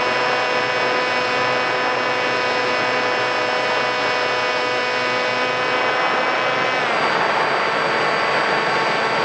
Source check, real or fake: real